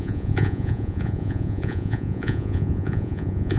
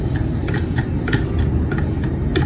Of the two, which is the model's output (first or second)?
first